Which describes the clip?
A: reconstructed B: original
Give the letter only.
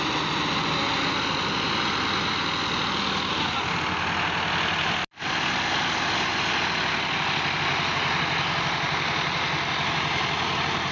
B